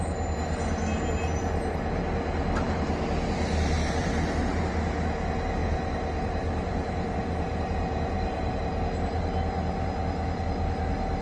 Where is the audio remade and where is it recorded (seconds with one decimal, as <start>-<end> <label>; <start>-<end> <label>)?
0.0-3.8 recorded; 3.8-4.6 remade; 4.6-5.6 recorded; 5.6-8.6 remade; 8.6-11.2 recorded